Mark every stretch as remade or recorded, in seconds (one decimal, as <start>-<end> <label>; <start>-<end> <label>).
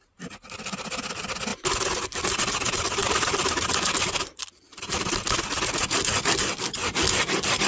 0.0-3.0 recorded; 3.0-6.3 remade; 6.3-7.7 recorded